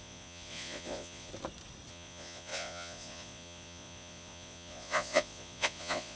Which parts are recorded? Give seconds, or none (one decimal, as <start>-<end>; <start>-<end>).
1.3-1.9